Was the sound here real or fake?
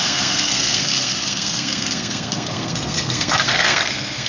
fake